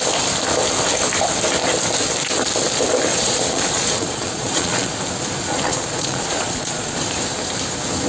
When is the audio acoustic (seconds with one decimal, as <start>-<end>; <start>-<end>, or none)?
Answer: 0.0-3.1; 4.9-5.5; 7.0-8.1